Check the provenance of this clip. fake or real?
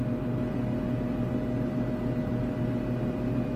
real